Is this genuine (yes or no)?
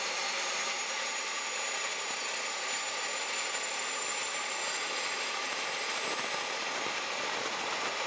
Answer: yes